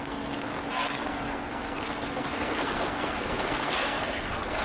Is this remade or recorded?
remade